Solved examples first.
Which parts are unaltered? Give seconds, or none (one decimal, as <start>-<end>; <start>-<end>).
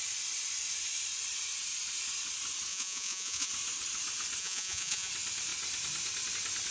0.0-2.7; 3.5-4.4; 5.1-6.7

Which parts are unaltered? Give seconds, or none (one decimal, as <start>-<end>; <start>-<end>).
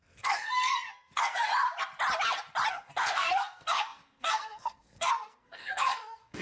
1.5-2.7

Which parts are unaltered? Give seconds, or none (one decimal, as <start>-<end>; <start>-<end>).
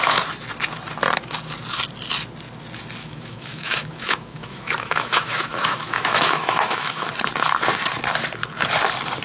0.0-3.0; 7.1-9.2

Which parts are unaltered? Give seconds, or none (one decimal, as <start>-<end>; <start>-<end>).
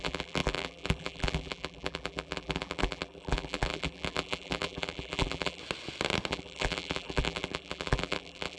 5.6-6.3